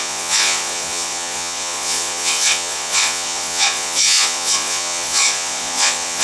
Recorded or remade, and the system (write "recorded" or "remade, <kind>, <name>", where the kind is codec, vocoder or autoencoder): remade, vocoder, Vocos